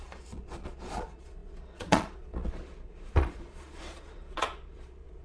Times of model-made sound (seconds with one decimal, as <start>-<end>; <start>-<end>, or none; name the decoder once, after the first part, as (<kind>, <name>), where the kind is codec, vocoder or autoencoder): 0.0-5.2 (vocoder, Vocos)